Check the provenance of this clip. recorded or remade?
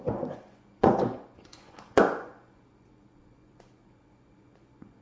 remade